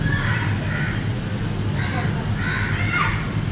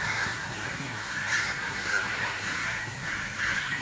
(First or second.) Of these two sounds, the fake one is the second